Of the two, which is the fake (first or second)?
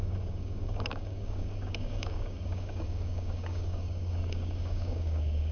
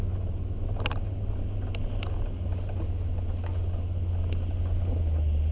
first